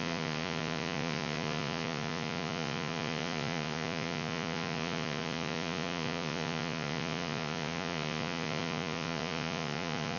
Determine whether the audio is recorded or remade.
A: remade